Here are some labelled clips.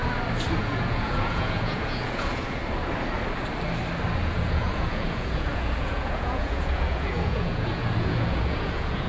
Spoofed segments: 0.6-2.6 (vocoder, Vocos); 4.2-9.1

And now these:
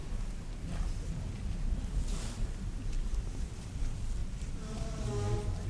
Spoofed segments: 4.2-5.1 (vocoder, BigVGAN v2)

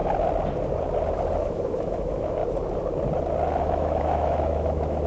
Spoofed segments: 1.4-2.4 (autoencoder, DAC-VAE); 3.6-5.1